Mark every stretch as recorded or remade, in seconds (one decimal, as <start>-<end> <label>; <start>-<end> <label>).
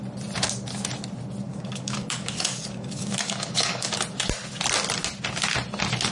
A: 0.0-1.5 recorded; 1.5-3.9 remade; 3.9-6.1 recorded